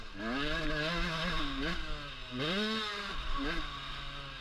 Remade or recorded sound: recorded